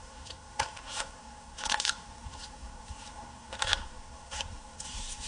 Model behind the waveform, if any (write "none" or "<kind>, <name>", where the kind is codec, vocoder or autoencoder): codec, SNAC